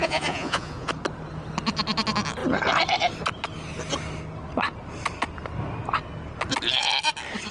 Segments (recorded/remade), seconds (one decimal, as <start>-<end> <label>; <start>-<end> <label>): 0.0-0.9 remade; 0.9-7.5 recorded